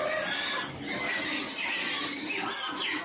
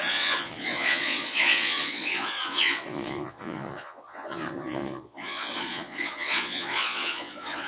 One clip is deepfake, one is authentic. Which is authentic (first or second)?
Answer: first